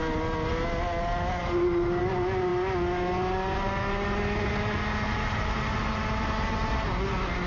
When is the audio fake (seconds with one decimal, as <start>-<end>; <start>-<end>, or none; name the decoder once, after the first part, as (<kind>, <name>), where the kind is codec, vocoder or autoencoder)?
none